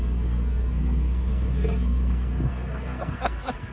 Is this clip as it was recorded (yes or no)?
no